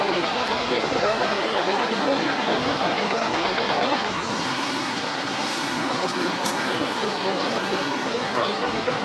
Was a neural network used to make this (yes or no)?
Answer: yes